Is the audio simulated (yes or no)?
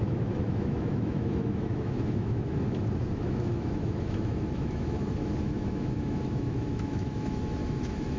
yes